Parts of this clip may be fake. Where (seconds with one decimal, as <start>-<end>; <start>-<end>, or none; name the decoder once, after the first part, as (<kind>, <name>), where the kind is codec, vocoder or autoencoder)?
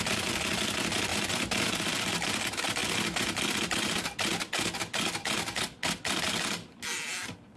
none